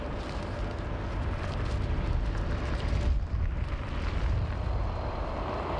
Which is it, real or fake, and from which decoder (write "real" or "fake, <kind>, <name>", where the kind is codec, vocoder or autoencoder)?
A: real